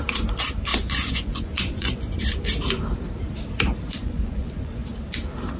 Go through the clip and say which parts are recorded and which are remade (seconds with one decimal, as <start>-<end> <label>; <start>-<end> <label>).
0.0-0.7 recorded; 0.7-2.2 remade; 2.2-4.0 recorded; 4.0-4.9 remade; 4.9-5.6 recorded